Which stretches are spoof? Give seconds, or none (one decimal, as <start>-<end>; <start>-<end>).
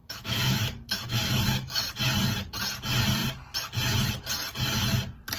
0.0-1.9